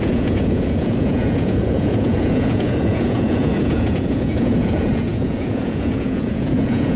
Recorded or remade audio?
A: remade